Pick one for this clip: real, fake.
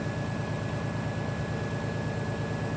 real